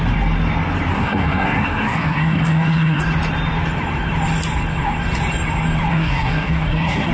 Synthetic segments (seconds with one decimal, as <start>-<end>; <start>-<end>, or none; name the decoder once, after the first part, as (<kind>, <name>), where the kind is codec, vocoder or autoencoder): 0.9-3.0 (codec, SNAC); 5.9-7.1

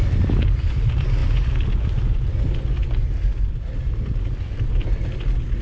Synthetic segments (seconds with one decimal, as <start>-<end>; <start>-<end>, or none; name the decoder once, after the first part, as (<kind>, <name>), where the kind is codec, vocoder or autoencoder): none